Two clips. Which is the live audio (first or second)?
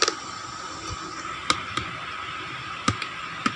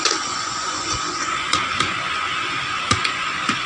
first